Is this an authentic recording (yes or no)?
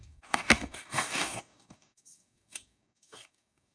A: no